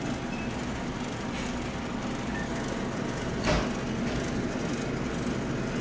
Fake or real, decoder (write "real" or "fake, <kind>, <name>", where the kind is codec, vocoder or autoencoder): real